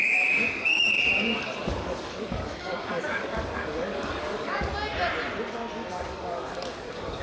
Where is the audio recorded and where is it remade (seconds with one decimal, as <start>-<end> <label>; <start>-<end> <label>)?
0.0-4.7 remade; 4.7-5.9 recorded; 5.9-7.2 remade